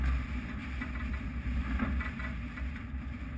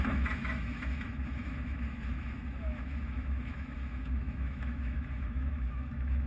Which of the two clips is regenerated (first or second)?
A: second